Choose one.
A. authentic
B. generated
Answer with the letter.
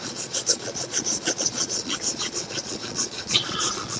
B